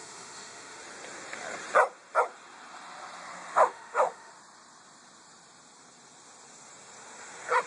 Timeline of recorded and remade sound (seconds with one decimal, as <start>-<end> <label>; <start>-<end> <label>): 0.0-0.8 remade; 0.8-3.5 recorded; 3.5-4.3 remade; 4.3-7.7 recorded